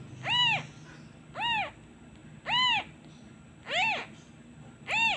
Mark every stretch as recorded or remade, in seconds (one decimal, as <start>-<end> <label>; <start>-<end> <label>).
0.0-5.2 recorded

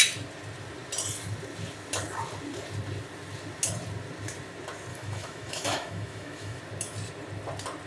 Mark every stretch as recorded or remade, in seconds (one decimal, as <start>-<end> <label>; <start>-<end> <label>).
0.0-4.9 recorded; 4.9-6.6 remade; 6.6-7.9 recorded

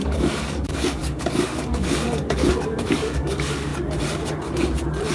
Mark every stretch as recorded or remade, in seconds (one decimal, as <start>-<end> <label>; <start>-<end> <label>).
0.0-3.7 remade; 3.7-5.1 recorded